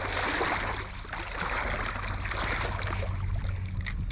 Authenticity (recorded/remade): recorded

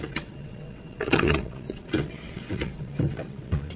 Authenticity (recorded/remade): remade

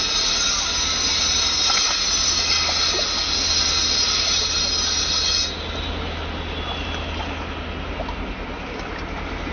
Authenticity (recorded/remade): recorded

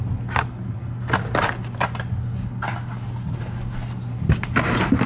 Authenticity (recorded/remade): recorded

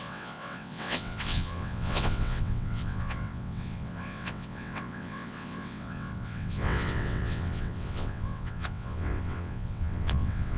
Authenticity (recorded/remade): remade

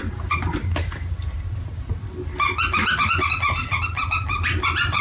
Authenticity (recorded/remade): recorded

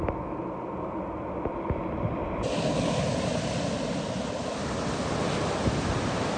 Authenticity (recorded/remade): recorded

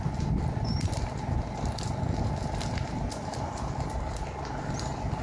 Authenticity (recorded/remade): recorded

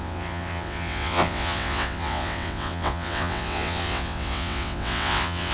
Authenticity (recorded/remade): remade